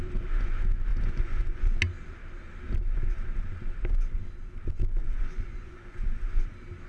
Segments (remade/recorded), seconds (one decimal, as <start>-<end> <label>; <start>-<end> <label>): 0.0-0.9 recorded; 0.9-1.6 remade; 1.6-5.0 recorded; 5.0-6.4 remade; 6.4-6.9 recorded